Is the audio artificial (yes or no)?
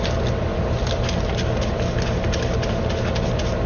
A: no